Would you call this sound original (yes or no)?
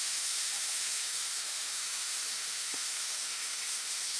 no